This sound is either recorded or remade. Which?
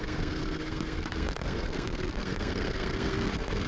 remade